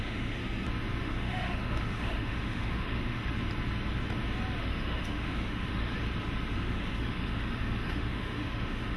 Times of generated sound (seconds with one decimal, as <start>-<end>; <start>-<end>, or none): 0.0-0.4; 1.0-3.2; 4.6-5.9; 6.5-9.0